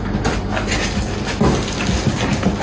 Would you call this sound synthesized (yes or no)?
no